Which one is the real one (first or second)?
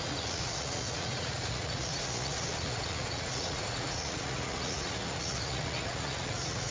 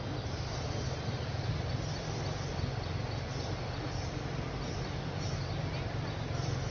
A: second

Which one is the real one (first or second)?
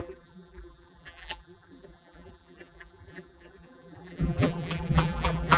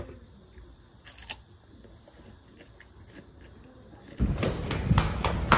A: second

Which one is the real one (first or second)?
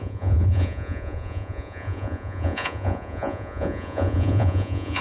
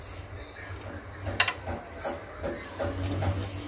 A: second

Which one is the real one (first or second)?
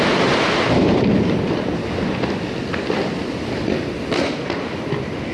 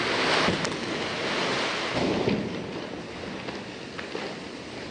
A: second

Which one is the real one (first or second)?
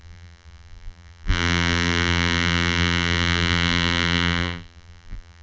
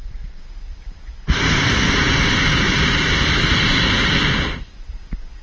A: second